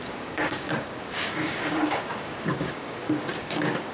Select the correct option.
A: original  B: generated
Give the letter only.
B